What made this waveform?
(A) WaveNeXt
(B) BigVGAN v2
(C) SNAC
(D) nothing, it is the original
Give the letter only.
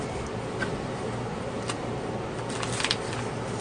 B